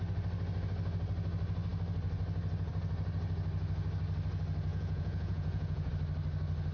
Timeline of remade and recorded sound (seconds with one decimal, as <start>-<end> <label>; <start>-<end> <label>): 0.0-4.7 recorded; 4.7-5.9 remade; 5.9-6.7 recorded